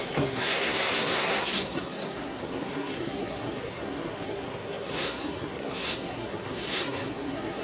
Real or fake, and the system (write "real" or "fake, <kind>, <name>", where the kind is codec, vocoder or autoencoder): fake, codec, SNAC